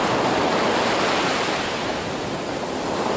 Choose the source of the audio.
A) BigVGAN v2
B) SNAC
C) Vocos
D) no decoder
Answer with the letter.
D